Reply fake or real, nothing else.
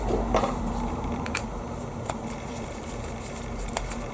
fake